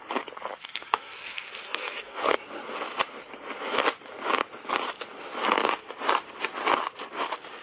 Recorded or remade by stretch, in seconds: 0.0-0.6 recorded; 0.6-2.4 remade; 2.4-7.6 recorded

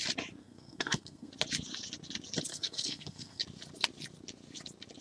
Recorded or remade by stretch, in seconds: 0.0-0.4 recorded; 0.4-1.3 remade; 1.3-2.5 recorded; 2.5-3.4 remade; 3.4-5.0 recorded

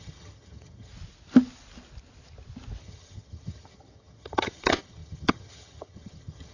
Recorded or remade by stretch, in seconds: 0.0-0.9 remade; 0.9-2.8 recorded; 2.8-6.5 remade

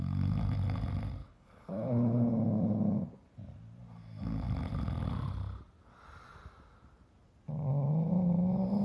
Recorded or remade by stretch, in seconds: 0.0-1.2 recorded; 1.2-2.3 remade; 2.3-8.8 recorded